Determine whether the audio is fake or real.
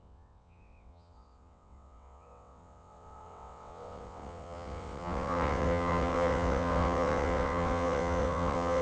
fake